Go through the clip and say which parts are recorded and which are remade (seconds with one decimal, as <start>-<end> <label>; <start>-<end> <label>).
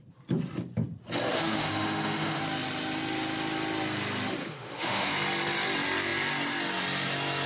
0.0-1.3 recorded; 1.3-2.4 remade; 2.4-4.4 recorded; 4.4-5.1 remade; 5.1-7.5 recorded